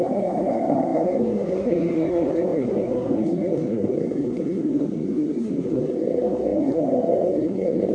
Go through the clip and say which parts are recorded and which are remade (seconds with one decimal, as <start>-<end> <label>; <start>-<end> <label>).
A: 0.0-7.9 remade